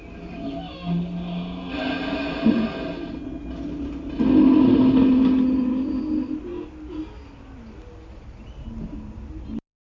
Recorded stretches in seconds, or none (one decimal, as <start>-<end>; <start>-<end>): 0.0-9.9